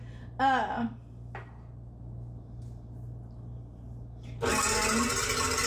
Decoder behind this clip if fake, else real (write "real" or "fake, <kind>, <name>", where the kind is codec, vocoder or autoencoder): real